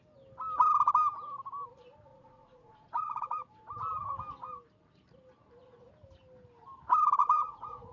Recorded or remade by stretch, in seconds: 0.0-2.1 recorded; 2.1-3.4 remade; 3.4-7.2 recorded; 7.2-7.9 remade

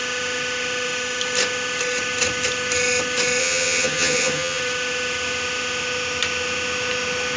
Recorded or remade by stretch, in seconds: 0.0-3.4 recorded; 3.4-4.6 remade; 4.6-7.4 recorded

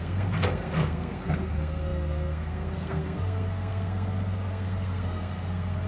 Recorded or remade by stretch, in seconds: 0.0-5.9 remade

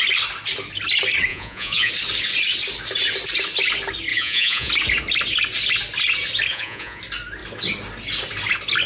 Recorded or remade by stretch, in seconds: 0.0-1.3 recorded; 1.3-1.9 remade; 1.9-4.1 recorded; 4.1-4.7 remade; 4.7-6.5 recorded; 6.5-7.0 remade; 7.0-8.9 recorded

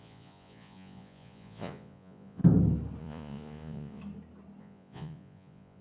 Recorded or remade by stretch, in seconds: 0.0-2.4 remade; 2.4-3.0 recorded; 3.0-4.0 remade; 4.0-4.6 recorded; 4.6-5.8 remade

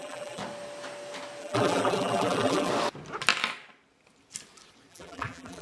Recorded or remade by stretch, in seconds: 0.0-0.4 remade; 0.4-1.4 recorded; 1.4-2.7 remade; 2.7-4.9 recorded; 4.9-5.6 remade

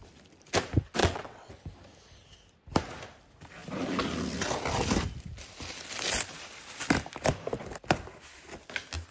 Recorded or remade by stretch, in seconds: 0.0-1.0 recorded; 1.0-1.5 remade; 1.5-9.1 recorded

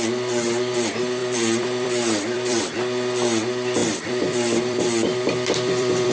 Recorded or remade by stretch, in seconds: 0.0-1.2 recorded; 1.2-2.6 remade; 2.6-3.8 recorded; 3.8-6.1 remade